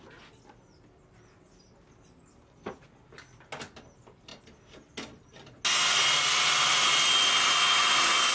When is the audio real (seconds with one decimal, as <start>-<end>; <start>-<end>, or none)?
0.0-8.3